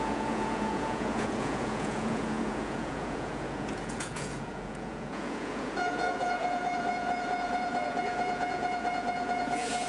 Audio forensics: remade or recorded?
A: remade